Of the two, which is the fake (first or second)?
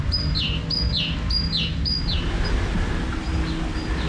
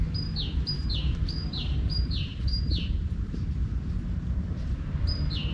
second